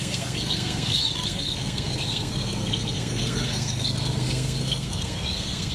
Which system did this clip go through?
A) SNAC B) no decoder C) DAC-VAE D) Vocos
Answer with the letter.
A